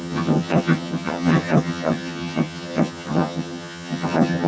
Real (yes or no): no